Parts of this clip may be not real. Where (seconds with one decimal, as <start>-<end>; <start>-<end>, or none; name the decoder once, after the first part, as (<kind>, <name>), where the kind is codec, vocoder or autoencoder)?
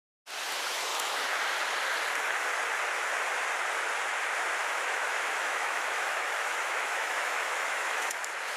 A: 0.9-1.4 (autoencoder, DAC-VAE); 4.6-8.2